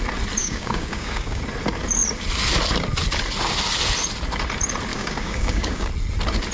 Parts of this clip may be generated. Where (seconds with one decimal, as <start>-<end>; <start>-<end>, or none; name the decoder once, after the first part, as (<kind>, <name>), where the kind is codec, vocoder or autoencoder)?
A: 0.4-1.4 (codec, DAC); 4.9-5.9